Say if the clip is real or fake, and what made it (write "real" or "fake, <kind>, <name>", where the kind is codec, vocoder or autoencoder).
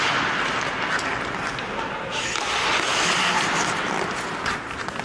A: real